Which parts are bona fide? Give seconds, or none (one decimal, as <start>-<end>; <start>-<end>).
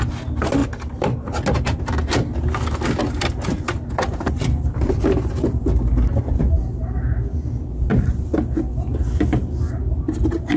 0.0-4.1; 5.0-10.6